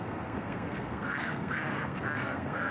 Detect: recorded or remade remade